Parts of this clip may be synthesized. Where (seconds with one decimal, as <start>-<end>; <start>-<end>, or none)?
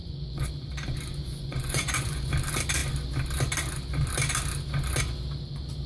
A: 0.0-0.5; 1.2-2.3